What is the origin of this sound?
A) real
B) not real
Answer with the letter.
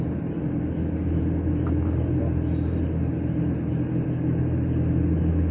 A